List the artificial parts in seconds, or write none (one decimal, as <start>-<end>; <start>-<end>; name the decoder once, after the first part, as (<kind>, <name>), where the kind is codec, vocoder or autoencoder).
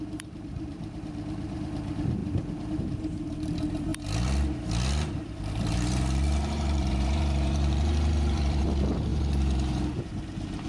0.0-3.9 (vocoder, BigVGAN v2); 5.1-10.7